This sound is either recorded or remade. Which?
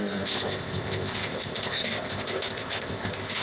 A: remade